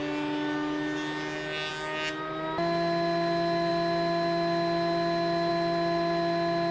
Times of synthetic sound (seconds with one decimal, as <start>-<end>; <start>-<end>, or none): none